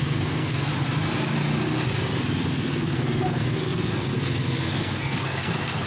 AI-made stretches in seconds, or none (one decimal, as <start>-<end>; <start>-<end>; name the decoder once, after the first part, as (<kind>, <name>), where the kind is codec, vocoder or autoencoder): 0.0-0.7 (codec, SNAC); 2.5-5.9